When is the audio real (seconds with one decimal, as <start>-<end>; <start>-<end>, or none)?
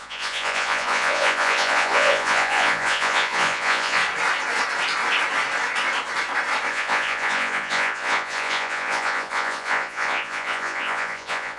4.0-6.7